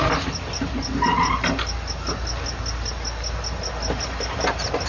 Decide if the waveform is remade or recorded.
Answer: recorded